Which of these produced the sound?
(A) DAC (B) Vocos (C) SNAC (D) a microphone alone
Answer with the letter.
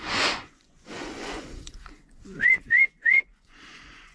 B